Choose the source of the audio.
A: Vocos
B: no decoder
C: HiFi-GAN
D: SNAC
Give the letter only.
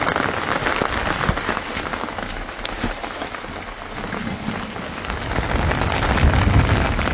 B